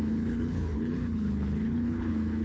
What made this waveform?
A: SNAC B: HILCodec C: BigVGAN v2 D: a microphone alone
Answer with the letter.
B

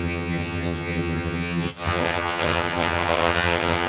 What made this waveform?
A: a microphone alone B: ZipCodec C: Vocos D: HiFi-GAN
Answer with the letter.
D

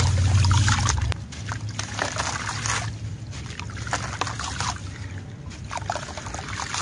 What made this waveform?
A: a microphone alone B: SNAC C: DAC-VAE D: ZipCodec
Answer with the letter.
A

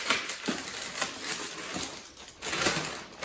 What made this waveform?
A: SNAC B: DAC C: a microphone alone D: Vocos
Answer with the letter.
C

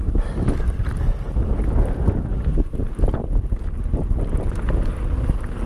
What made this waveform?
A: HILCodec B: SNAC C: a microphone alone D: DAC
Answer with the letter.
C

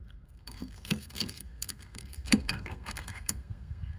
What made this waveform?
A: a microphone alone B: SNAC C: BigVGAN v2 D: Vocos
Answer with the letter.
B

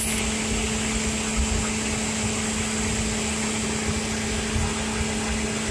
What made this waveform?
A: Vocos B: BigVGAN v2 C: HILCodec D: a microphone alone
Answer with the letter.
D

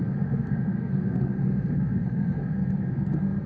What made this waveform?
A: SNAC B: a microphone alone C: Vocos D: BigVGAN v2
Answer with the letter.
A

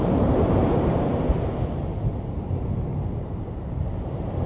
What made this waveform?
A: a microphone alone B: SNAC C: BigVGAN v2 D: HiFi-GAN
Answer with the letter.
C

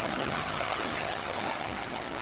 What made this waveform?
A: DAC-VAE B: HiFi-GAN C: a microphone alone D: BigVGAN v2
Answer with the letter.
B